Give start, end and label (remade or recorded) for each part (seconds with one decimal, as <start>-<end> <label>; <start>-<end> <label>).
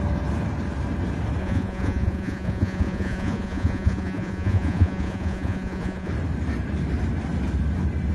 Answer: 0.0-1.4 recorded; 1.4-6.1 remade; 6.1-8.1 recorded